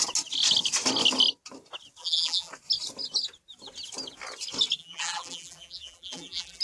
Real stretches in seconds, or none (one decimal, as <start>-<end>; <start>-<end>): 0.0-2.0; 2.5-4.8